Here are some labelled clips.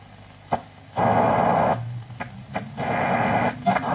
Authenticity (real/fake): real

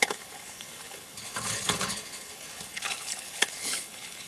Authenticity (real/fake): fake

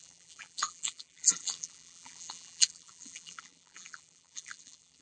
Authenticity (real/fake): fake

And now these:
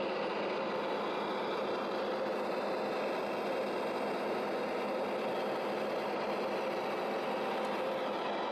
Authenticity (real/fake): real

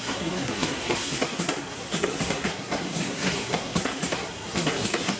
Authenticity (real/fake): fake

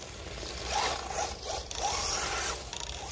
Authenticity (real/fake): real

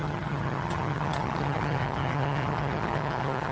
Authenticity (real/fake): fake